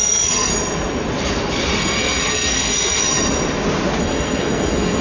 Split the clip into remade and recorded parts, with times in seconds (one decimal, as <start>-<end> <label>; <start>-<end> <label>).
0.0-0.5 remade; 0.5-1.8 recorded; 1.8-3.0 remade; 3.0-4.0 recorded; 4.0-5.0 remade